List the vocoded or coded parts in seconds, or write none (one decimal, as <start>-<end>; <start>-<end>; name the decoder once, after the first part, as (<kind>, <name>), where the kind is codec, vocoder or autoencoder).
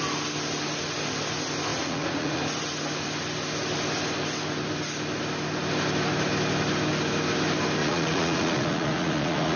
1.7-2.4 (vocoder, Vocos); 7.8-9.6